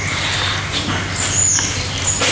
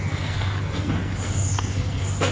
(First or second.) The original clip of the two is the first